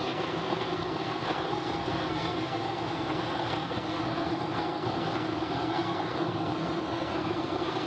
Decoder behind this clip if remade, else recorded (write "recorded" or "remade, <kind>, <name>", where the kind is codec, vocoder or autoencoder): remade, codec, SNAC